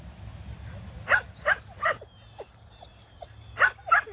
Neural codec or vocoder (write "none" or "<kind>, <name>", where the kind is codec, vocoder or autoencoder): none